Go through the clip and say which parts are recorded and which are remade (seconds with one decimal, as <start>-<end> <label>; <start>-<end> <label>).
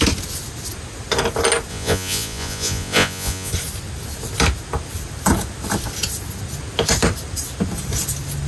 0.0-1.7 recorded; 1.7-3.5 remade; 3.5-8.5 recorded